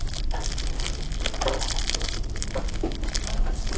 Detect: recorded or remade recorded